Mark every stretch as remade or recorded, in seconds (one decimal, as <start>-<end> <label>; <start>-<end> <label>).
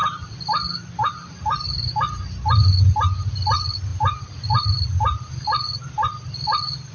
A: 0.0-6.9 recorded